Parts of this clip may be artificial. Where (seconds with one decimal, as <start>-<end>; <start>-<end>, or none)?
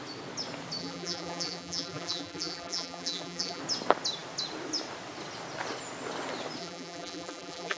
0.8-3.6; 6.6-7.8